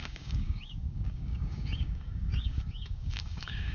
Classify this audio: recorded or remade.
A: remade